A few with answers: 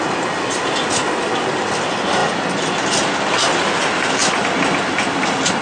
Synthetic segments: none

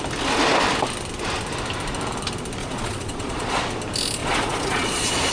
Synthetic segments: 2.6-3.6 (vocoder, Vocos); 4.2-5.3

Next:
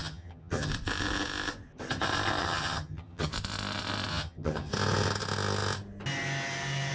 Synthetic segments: 0.0-0.7 (vocoder, HiFi-GAN); 2.4-3.3; 4.1-4.7

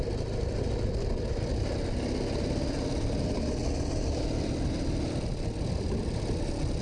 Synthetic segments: none

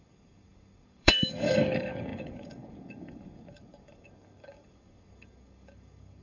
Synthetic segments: 0.0-6.2 (codec, DAC)

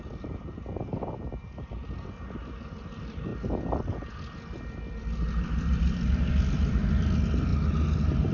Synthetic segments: 0.0-3.3 (vocoder, BigVGAN v2); 4.9-7.5

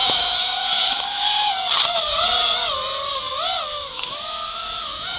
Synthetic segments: 0.0-1.5 (autoencoder, DAC-VAE); 3.7-5.2